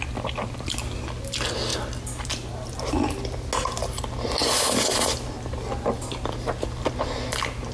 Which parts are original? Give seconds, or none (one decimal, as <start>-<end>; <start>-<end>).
0.0-7.7

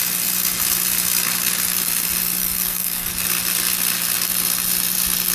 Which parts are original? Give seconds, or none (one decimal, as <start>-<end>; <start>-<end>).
0.0-2.4; 3.1-5.3